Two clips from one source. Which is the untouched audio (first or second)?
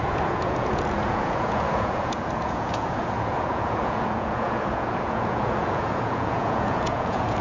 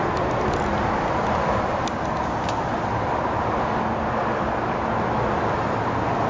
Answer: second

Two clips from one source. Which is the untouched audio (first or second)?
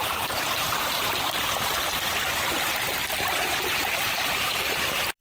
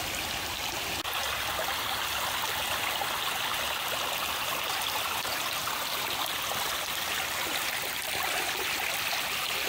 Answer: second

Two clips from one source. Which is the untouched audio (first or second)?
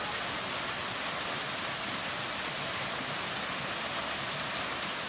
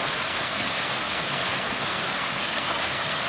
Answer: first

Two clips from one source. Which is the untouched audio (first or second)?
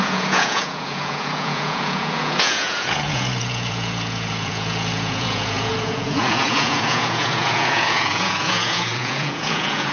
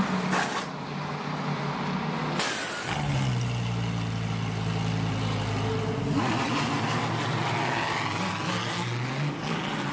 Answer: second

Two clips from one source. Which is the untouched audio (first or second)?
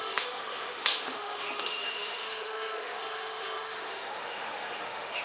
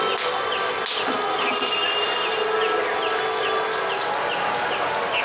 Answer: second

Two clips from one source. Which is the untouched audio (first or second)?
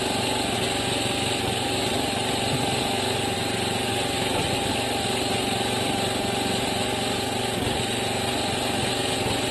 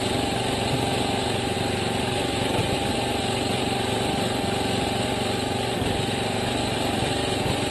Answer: first